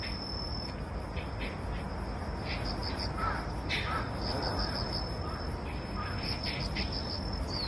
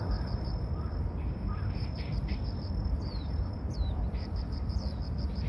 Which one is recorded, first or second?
first